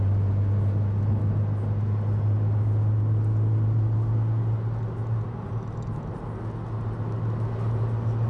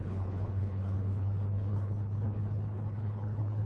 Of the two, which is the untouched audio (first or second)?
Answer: first